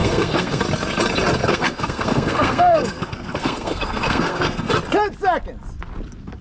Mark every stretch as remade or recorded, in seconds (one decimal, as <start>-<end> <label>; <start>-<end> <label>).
0.0-0.6 remade; 0.6-1.4 recorded; 1.4-4.7 remade; 4.7-6.4 recorded